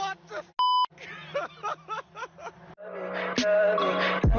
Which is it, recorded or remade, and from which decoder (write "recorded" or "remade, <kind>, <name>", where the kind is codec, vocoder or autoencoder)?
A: recorded